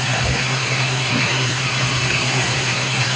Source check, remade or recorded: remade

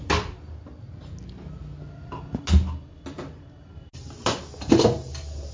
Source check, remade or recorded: recorded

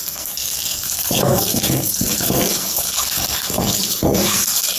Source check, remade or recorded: remade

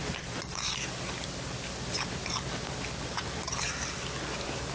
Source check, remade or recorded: recorded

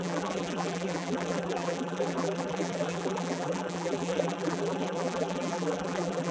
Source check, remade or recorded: remade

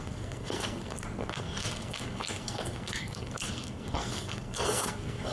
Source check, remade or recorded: remade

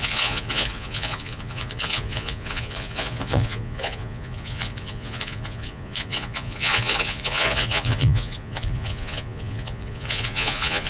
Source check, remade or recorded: remade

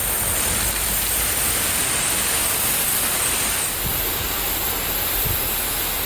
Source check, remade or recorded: recorded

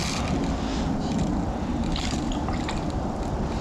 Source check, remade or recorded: recorded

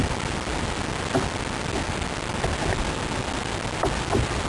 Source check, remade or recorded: recorded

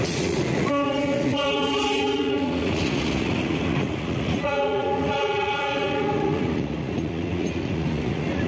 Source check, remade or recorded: remade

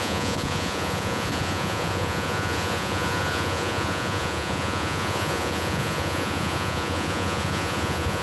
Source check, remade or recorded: remade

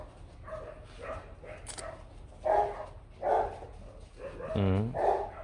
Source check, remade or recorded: recorded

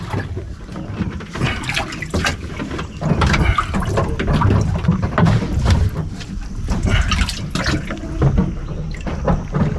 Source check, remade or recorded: recorded